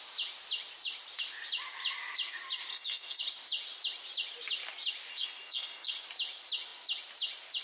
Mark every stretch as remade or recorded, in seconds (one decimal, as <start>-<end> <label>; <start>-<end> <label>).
0.0-2.7 recorded; 2.7-3.2 remade; 3.2-5.1 recorded; 5.1-5.9 remade; 5.9-7.6 recorded